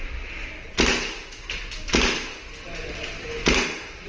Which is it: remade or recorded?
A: recorded